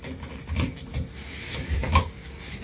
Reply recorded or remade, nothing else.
recorded